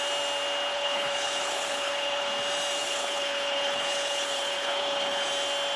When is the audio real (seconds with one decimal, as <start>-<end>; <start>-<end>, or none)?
0.0-0.7; 2.3-2.8; 5.3-5.8